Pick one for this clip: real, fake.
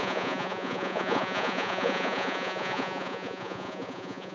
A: fake